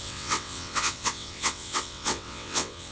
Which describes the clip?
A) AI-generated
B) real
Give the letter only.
A